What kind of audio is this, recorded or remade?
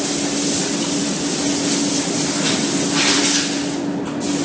recorded